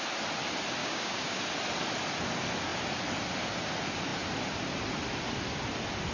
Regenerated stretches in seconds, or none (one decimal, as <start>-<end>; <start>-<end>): 0.8-1.4